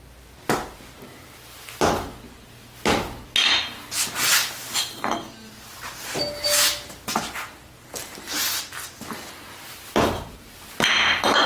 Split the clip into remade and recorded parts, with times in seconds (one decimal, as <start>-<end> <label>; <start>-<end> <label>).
0.0-11.5 recorded